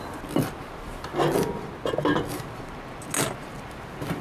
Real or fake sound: real